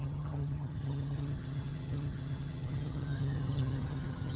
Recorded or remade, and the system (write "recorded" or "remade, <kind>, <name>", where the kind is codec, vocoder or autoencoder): remade, vocoder, HiFi-GAN